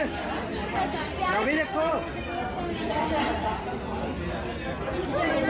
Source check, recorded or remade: recorded